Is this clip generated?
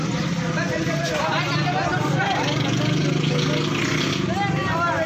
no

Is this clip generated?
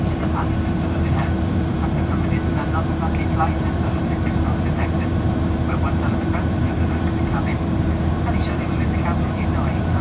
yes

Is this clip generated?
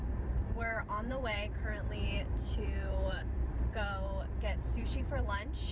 yes